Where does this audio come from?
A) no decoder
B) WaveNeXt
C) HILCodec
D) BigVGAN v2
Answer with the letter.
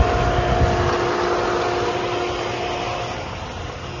A